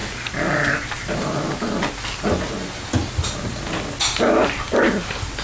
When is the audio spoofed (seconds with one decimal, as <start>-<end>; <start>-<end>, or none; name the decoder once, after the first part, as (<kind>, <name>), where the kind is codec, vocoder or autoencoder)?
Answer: none